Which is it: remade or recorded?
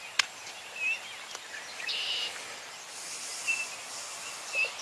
recorded